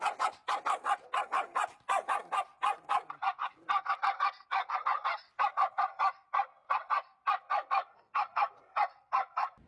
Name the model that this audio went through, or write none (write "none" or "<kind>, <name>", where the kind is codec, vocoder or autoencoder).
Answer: none